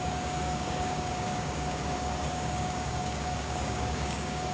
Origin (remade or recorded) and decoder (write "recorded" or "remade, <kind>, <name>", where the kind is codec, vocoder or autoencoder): remade, codec, DAC